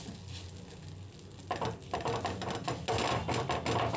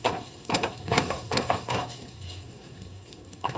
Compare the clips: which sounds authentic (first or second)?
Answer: first